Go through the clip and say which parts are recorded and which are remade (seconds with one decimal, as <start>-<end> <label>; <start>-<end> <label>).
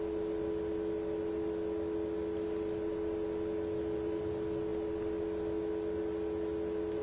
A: 0.0-7.0 recorded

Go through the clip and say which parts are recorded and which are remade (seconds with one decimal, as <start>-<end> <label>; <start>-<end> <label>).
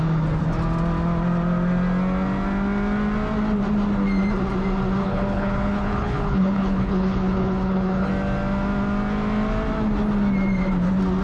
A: 0.0-5.0 recorded; 5.0-8.1 remade; 8.1-11.2 recorded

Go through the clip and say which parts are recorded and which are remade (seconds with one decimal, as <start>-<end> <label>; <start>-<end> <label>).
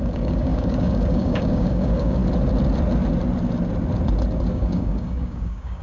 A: 0.0-2.2 remade; 2.2-4.5 recorded; 4.5-5.8 remade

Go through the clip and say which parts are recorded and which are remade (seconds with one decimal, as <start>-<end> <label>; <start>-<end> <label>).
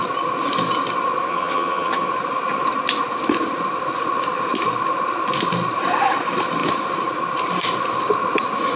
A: 0.0-1.3 recorded; 1.3-2.1 remade; 2.1-8.8 recorded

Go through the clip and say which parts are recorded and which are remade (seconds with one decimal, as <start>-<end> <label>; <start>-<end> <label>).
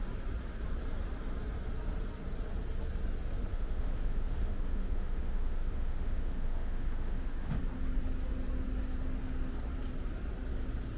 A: 0.0-3.5 recorded; 3.5-7.6 remade; 7.6-11.0 recorded